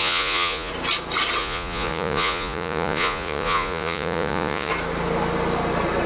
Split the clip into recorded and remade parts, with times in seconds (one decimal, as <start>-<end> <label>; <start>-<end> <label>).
0.0-0.7 remade; 0.7-1.4 recorded; 1.4-4.7 remade; 4.7-6.1 recorded